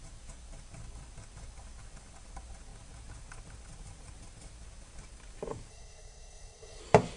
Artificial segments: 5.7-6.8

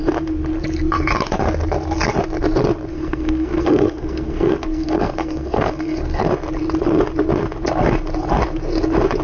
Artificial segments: 2.9-6.2

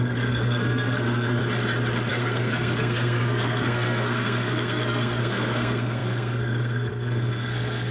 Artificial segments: 0.0-1.4; 2.1-7.9

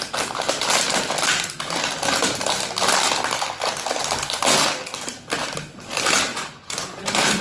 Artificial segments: 6.3-7.0

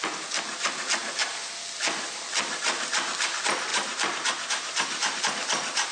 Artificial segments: 3.7-5.2

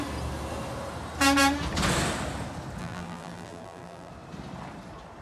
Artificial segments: 2.8-4.1